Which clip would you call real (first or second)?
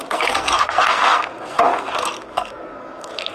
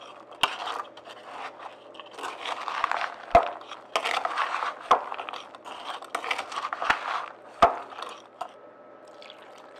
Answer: second